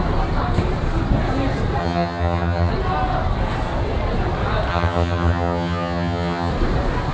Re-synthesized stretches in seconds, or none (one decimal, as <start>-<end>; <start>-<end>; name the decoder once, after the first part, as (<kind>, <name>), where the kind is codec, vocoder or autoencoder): 1.8-2.7 (vocoder, HiFi-GAN); 4.7-6.5